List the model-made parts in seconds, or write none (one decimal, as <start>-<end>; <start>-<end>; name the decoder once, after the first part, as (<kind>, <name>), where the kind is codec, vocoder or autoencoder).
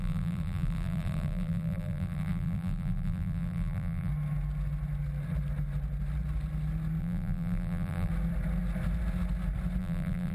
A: 0.0-4.1 (vocoder, BigVGAN v2); 7.0-8.1; 9.8-10.3